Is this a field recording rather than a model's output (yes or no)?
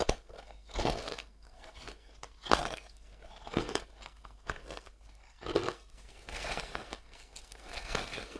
no